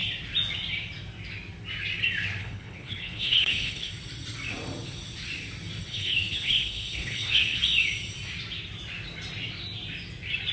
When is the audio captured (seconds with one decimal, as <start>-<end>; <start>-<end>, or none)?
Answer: 0.0-2.4; 3.9-5.9; 7.6-10.5